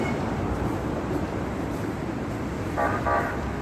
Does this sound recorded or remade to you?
remade